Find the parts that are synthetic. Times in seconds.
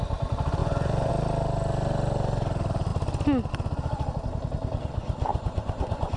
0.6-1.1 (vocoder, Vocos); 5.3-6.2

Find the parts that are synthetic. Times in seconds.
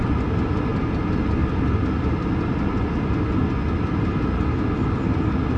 none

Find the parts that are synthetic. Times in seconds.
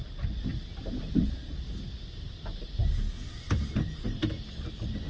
none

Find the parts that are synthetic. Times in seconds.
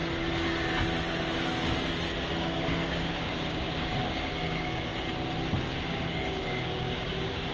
2.3-4.9 (codec, DAC); 5.6-7.5